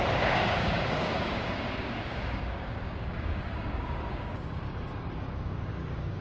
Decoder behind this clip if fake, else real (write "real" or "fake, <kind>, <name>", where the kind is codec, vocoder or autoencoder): fake, codec, DAC